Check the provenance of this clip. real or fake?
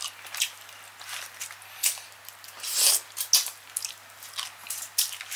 real